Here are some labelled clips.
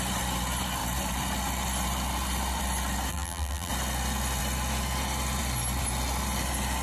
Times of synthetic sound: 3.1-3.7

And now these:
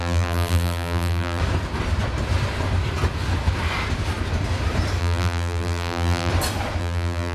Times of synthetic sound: 0.0-1.4; 5.0-6.3; 6.8-7.3